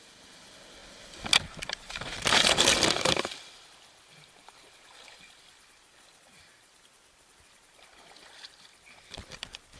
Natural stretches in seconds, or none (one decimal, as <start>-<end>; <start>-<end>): 0.8-2.8